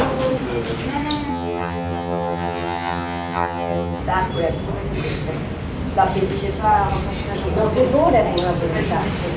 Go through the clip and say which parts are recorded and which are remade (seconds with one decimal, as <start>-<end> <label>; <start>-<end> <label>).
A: 0.0-1.3 recorded; 1.3-4.0 remade; 4.0-9.4 recorded